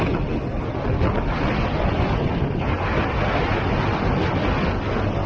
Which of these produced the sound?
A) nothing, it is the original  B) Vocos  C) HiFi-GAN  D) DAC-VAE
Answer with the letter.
A